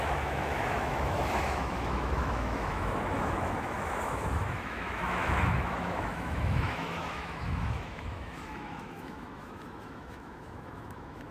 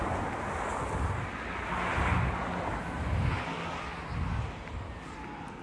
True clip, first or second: second